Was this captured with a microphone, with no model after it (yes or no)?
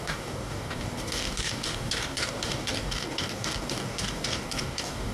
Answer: no